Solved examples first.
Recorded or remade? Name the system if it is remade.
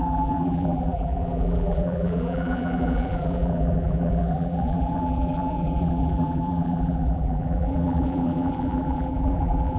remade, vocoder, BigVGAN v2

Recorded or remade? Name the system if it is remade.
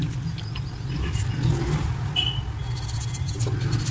recorded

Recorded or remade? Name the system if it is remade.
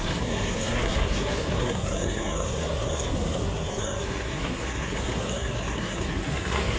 remade, codec, SNAC